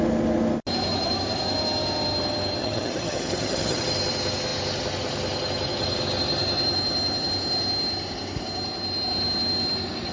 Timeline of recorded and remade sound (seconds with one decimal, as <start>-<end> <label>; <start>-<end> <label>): 0.0-2.6 recorded; 2.6-3.8 remade; 3.8-10.1 recorded